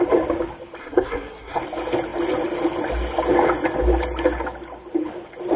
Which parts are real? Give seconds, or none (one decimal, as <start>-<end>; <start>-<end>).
0.0-0.8; 1.6-5.6